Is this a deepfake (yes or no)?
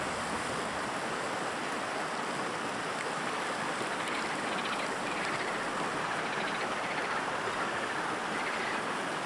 no